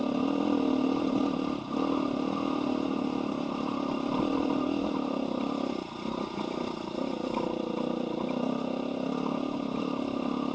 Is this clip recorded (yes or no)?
yes